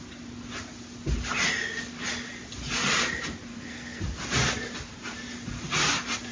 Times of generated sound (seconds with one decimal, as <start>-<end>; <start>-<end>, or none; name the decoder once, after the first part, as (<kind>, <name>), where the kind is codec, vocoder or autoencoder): 3.5-4.0 (codec, SNAC)